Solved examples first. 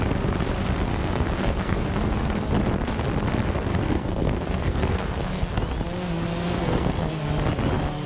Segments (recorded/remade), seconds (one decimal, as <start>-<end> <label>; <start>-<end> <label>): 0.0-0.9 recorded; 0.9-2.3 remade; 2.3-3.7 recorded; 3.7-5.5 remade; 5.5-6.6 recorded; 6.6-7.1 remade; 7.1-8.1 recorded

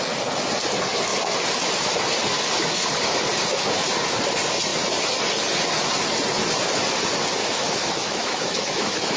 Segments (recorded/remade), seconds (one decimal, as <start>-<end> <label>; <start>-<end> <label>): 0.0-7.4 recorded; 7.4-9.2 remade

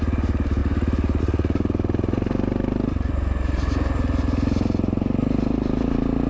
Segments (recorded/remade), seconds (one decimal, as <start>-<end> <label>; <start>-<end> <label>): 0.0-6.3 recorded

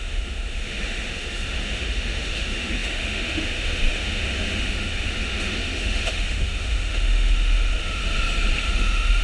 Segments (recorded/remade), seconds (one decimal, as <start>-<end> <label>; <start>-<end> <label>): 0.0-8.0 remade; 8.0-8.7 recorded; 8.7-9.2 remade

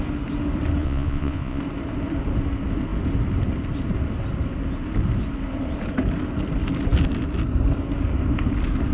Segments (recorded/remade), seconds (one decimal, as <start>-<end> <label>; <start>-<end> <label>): 0.0-0.8 recorded; 0.8-1.6 remade; 1.6-8.9 recorded

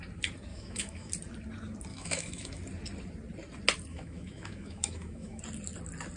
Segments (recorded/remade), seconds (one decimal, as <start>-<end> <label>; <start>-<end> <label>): 0.0-0.5 recorded; 0.5-1.1 remade; 1.1-1.9 recorded; 1.9-2.6 remade; 2.6-3.9 recorded; 3.9-5.4 remade; 5.4-6.2 recorded